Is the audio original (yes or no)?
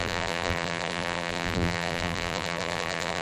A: no